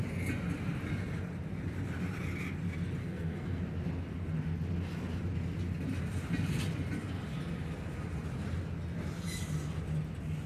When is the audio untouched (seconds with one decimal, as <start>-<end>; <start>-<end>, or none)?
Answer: 0.0-3.0; 3.6-10.5